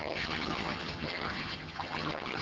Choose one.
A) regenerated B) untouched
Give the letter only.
A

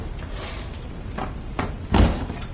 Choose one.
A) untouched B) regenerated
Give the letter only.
B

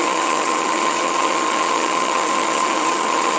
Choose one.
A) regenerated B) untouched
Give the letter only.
A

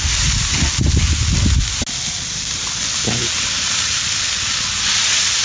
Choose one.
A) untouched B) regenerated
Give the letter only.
A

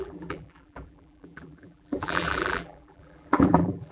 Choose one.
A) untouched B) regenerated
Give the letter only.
B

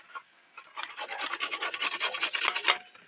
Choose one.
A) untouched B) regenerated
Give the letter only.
A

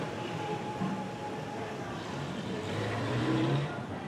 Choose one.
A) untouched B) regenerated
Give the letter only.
B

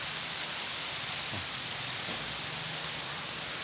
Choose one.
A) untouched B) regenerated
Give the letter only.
A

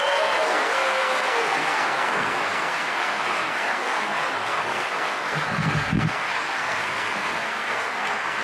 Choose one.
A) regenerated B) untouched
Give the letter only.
A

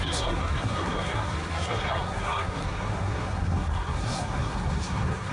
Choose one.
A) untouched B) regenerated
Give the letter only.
B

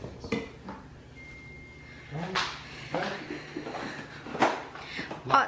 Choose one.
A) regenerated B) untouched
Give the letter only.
B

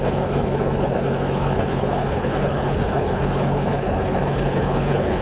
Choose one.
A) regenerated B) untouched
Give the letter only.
A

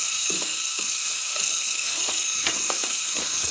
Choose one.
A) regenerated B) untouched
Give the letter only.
A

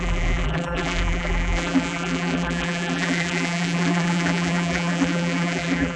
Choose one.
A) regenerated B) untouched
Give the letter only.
A